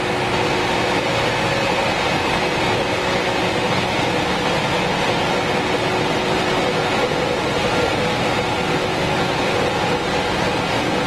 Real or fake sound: real